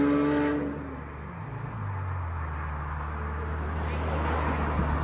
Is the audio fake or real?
real